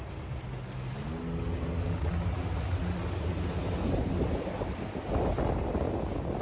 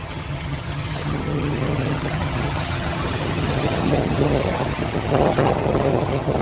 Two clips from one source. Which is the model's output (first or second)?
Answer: second